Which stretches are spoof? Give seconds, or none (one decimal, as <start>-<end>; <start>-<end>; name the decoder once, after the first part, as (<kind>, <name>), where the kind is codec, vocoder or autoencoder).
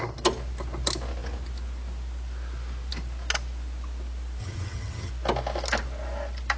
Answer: 4.4-5.1 (vocoder, HiFi-GAN)